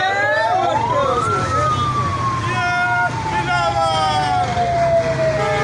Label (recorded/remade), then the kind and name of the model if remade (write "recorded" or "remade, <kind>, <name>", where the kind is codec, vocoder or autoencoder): recorded